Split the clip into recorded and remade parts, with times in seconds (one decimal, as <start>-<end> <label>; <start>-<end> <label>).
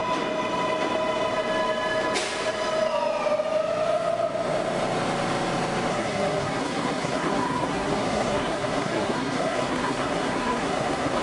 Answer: 0.0-5.9 recorded; 5.9-11.2 remade